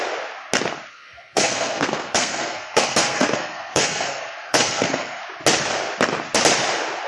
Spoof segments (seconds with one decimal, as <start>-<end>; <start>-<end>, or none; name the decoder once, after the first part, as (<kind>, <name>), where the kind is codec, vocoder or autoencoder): 0.9-5.2 (codec, SNAC)